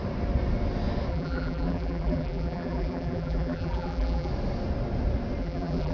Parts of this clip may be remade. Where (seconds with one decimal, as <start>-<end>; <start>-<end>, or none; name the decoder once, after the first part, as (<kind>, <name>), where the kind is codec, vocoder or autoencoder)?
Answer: 1.1-4.3 (vocoder, BigVGAN v2); 5.4-5.9